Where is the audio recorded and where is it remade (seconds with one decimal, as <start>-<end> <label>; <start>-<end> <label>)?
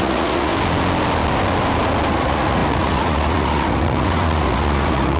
0.0-0.5 remade; 0.5-2.1 recorded; 2.1-5.2 remade